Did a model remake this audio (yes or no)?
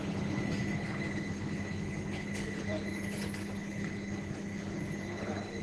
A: yes